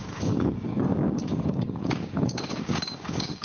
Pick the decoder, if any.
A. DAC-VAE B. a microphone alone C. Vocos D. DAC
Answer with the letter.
D